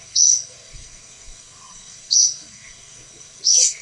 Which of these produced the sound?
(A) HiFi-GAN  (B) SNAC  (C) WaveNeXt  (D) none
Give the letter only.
B